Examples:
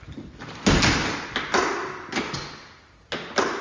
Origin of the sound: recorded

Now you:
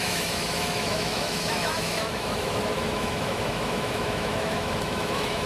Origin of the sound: remade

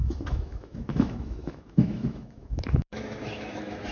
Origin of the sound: remade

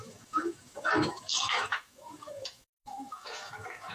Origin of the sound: remade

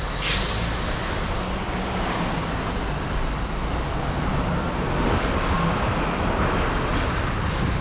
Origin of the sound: recorded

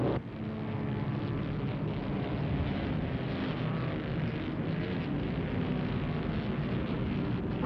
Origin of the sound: recorded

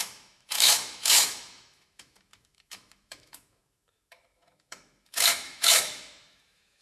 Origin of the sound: remade